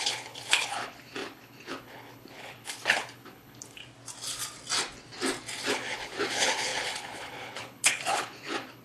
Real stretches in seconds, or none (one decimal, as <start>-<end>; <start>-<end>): 3.8-5.7